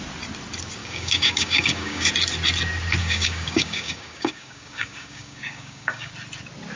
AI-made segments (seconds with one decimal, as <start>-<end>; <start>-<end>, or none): 0.8-2.1; 3.0-6.1